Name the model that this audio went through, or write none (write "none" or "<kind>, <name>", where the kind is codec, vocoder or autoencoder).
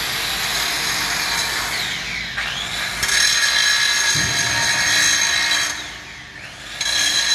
none